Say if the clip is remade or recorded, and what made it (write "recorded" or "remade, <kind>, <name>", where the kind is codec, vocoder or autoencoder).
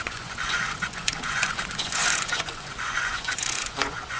remade, vocoder, Vocos